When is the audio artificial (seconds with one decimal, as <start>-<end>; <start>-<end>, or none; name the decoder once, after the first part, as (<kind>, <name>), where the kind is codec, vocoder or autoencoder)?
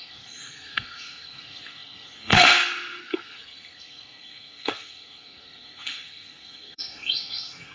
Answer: 0.0-7.7 (codec, SNAC)